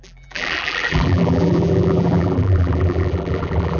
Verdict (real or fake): fake